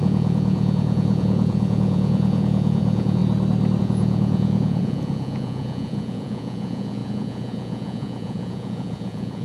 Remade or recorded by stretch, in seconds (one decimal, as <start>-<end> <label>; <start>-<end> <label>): 0.0-3.2 remade; 3.2-3.8 recorded; 3.8-9.4 remade

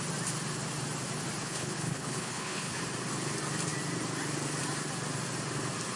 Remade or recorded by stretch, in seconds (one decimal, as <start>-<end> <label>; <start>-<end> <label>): 0.0-1.4 recorded; 1.4-2.8 remade; 2.8-6.0 recorded